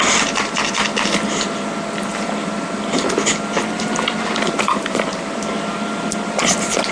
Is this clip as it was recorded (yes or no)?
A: yes